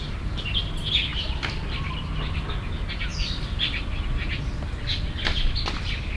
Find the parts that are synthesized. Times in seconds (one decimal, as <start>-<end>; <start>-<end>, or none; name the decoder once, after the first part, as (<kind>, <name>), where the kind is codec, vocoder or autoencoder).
1.1-2.5 (vocoder, BigVGAN v2); 3.1-4.5